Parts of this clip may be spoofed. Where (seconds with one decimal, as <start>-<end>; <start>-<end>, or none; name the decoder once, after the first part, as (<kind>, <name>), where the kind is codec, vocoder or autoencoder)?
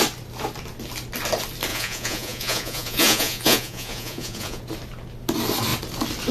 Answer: 1.7-4.6 (vocoder, Vocos)